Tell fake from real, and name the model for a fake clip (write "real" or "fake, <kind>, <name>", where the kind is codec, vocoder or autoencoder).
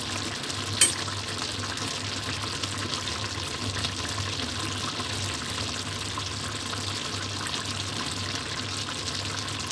real